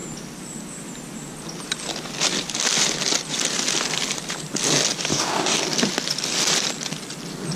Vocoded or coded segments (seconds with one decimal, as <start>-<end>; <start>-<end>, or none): 5.1-5.6